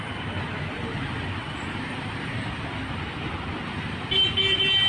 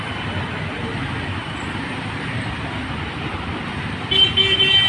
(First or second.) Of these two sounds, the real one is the first